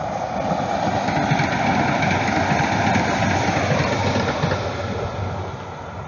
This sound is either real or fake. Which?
real